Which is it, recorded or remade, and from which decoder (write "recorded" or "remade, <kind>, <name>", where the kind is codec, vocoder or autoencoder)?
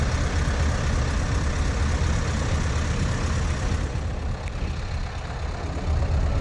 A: recorded